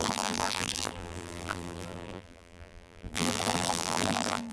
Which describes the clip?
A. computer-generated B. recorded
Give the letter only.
A